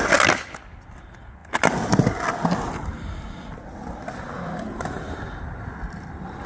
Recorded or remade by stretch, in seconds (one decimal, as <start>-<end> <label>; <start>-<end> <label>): 0.0-6.5 recorded